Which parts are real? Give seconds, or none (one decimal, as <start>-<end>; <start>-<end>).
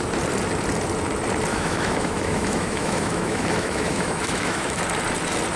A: 0.0-1.5; 4.8-5.6